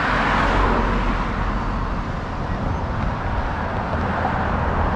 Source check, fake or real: real